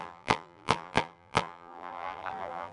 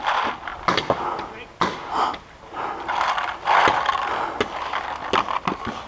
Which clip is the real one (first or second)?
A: second